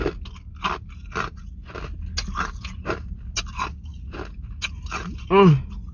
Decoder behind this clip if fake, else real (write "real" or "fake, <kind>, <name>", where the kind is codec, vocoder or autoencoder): real